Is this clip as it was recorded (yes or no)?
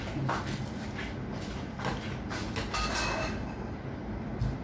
yes